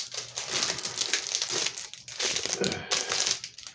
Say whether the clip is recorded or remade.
recorded